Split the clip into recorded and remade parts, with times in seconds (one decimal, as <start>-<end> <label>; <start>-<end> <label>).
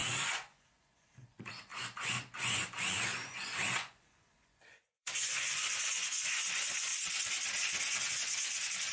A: 0.0-6.9 remade; 6.9-8.1 recorded; 8.1-8.9 remade